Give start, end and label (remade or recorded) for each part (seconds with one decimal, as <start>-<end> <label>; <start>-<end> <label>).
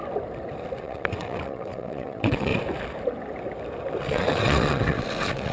0.0-0.8 recorded; 0.8-2.5 remade; 2.5-4.0 recorded; 4.0-5.5 remade